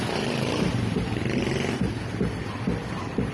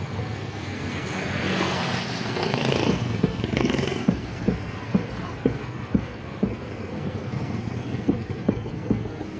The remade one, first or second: second